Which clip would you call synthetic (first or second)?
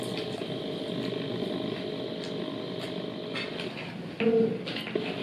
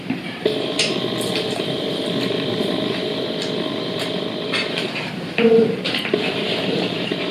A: second